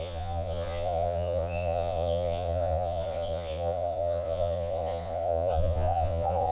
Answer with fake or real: fake